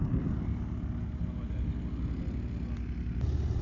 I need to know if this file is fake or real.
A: real